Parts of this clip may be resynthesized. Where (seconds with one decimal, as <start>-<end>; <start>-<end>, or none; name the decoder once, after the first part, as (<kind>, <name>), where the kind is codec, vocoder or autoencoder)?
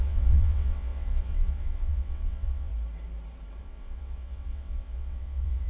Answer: 0.0-2.7 (vocoder, WaveNeXt); 3.6-5.7